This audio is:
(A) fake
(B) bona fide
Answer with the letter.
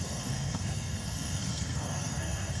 A